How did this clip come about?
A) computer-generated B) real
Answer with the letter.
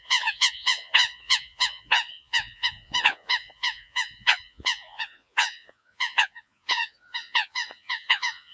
A